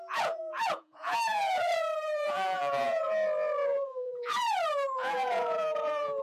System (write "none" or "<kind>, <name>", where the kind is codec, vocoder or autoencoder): vocoder, Vocos